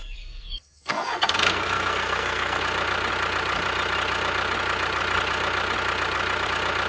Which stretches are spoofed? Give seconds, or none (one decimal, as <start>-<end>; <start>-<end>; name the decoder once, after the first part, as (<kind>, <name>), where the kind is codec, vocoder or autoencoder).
0.0-2.6 (codec, SNAC)